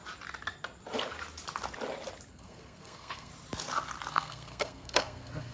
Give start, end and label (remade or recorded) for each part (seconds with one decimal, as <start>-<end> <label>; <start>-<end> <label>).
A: 0.0-2.3 recorded; 2.3-3.3 remade; 3.3-4.1 recorded; 4.1-5.5 remade